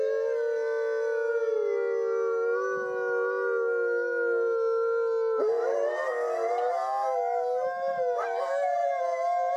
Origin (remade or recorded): recorded